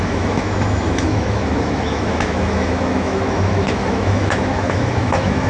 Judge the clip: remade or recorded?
remade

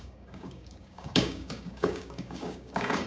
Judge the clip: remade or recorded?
remade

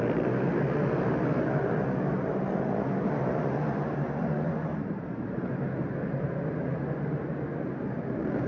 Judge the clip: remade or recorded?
recorded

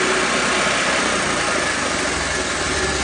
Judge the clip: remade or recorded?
recorded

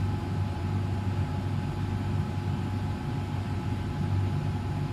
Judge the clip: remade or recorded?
recorded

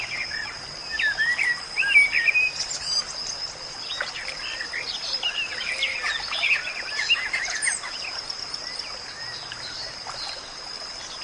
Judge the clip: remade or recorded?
recorded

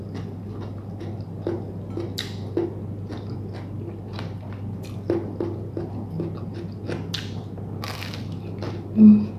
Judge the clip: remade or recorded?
recorded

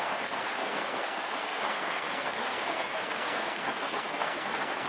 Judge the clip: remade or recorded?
remade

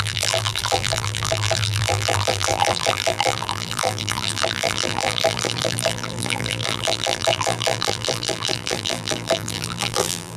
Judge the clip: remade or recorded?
remade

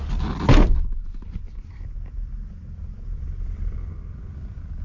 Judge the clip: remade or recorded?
remade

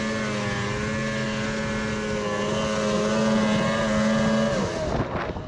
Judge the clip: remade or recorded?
recorded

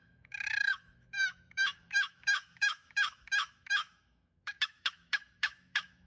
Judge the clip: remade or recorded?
remade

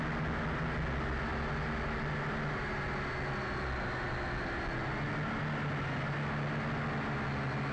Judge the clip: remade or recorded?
recorded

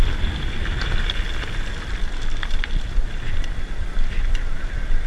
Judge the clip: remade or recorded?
recorded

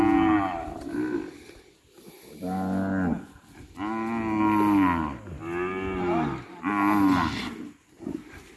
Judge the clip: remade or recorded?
recorded